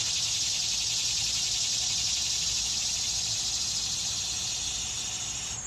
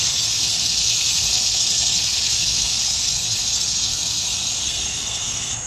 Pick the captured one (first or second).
first